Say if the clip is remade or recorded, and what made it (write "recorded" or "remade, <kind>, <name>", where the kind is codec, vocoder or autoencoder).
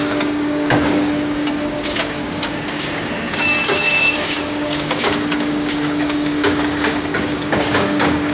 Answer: remade, codec, DAC